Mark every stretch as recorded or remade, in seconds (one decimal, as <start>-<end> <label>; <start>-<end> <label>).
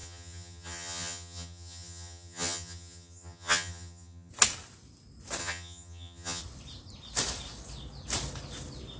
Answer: 0.0-4.3 remade; 4.3-5.4 recorded; 5.4-6.4 remade; 6.4-9.0 recorded